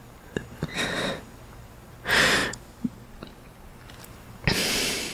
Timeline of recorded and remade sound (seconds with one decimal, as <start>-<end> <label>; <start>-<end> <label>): 0.0-5.1 recorded